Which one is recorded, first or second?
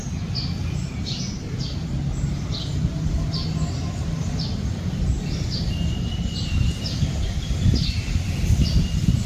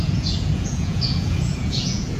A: first